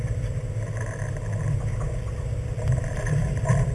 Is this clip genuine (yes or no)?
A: no